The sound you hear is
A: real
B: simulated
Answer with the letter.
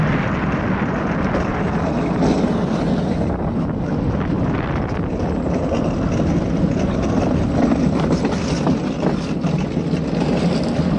A